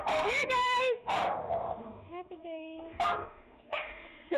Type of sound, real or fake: fake